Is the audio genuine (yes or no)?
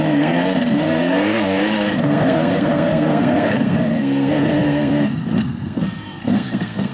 no